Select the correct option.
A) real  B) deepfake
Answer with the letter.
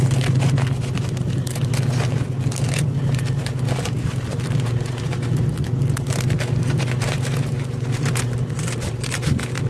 A